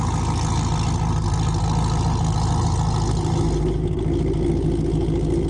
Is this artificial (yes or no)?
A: no